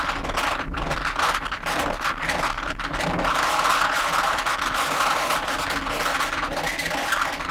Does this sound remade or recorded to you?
recorded